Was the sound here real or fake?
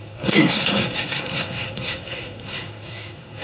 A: fake